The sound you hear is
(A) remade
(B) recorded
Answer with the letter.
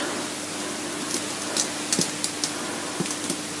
B